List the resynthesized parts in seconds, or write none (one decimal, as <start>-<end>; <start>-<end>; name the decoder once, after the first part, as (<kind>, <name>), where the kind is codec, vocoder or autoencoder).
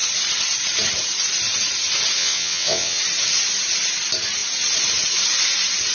2.2-3.0 (vocoder, WaveNeXt)